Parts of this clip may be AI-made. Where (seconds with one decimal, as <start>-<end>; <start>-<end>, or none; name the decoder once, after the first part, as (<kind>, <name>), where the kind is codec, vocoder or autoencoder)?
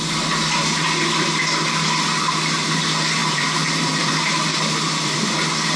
3.2-4.1 (vocoder, BigVGAN v2); 4.5-5.2